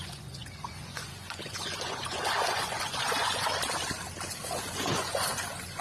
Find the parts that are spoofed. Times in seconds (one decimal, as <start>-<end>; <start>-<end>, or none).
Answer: 0.0-3.5; 4.6-5.8